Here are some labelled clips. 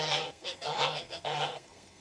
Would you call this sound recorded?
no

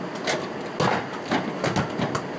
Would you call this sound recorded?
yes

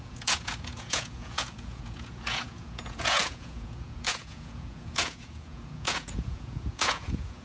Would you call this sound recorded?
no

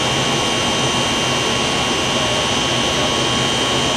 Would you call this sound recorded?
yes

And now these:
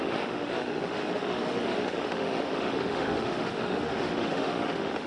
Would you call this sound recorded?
no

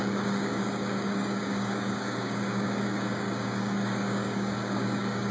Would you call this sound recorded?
no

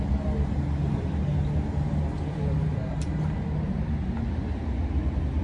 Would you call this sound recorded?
yes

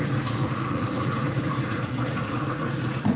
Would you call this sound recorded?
no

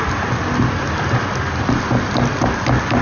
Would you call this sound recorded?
yes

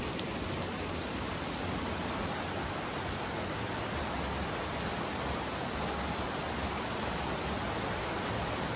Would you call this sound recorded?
yes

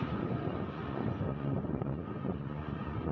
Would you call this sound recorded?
no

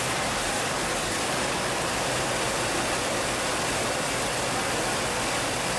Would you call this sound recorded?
yes